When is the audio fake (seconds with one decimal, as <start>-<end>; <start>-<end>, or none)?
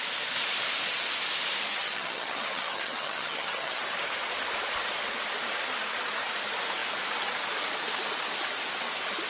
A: 1.7-3.8